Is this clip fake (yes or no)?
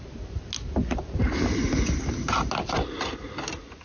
no